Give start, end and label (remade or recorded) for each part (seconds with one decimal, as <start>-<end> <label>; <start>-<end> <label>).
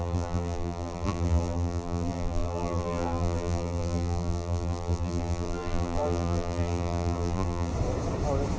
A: 0.0-7.7 remade; 7.7-8.6 recorded